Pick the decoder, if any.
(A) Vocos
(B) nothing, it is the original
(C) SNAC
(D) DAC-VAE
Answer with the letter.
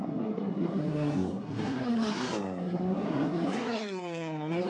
C